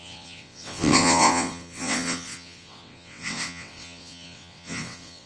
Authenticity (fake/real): fake